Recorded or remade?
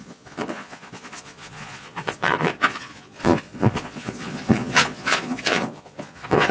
remade